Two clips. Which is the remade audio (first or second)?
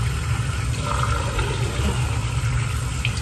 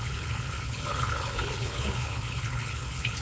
second